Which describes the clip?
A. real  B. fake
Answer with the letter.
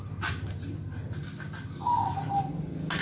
A